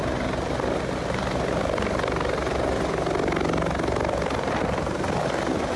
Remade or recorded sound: recorded